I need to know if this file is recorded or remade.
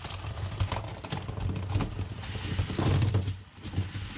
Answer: recorded